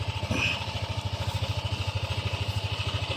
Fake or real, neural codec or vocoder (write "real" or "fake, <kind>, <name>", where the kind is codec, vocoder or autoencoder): real